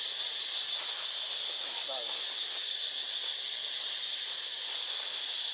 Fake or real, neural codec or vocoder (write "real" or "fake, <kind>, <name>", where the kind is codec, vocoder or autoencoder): real